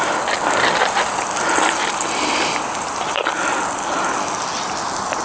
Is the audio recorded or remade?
recorded